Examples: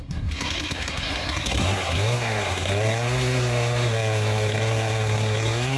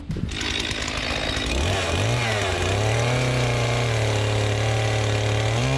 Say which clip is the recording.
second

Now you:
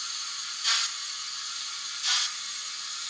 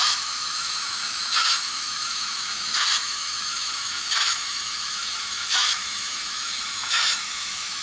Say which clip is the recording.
first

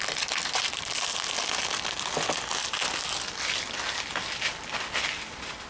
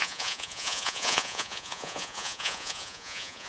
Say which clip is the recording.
first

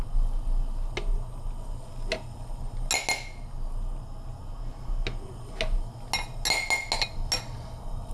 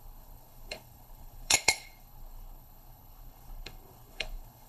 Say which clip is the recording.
first